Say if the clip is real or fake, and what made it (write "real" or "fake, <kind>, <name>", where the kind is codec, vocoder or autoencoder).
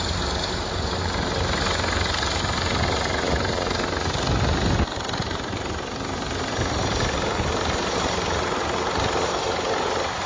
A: real